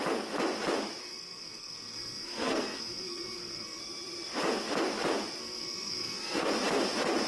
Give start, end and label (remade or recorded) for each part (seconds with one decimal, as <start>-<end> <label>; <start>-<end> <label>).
0.0-1.0 recorded; 1.0-3.8 remade; 3.8-5.4 recorded; 5.4-6.5 remade; 6.5-7.3 recorded